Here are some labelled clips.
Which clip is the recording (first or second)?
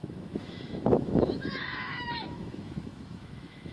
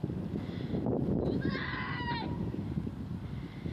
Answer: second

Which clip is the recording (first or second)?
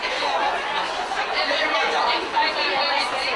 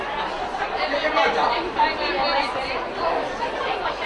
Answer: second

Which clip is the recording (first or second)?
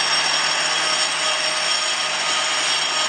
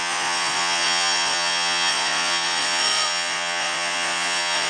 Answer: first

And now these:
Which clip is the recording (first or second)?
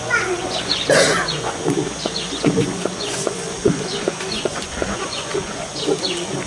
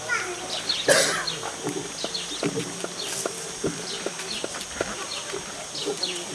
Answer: second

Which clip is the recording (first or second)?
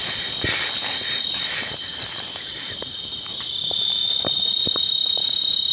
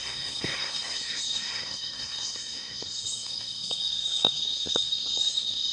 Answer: first